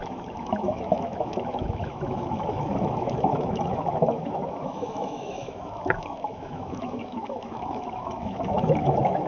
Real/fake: fake